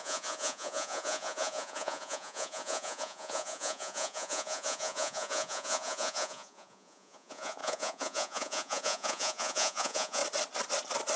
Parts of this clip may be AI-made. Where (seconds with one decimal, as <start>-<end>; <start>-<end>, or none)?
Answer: 0.0-10.2